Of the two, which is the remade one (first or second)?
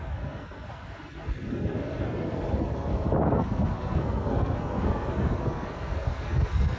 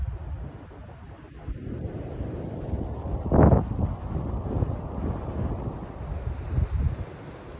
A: first